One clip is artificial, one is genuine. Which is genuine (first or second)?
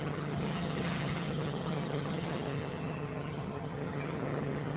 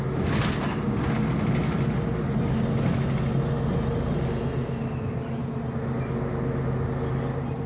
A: second